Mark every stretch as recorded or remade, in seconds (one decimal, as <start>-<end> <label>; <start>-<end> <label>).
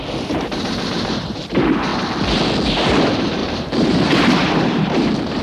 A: 0.0-1.9 remade; 1.9-2.9 recorded; 2.9-5.4 remade